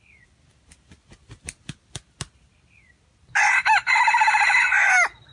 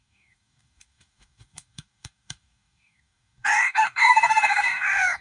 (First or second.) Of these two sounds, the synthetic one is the second